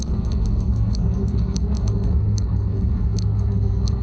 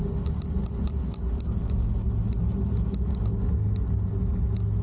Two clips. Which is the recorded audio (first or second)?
second